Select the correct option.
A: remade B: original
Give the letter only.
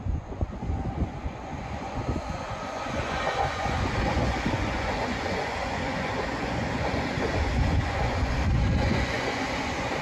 A